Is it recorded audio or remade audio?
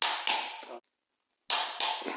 recorded